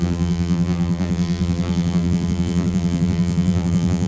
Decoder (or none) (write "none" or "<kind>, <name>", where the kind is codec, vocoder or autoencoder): vocoder, BigVGAN v2